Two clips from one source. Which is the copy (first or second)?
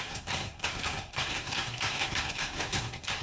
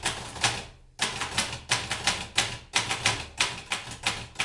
first